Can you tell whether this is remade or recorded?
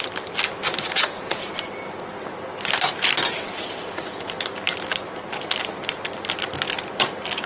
recorded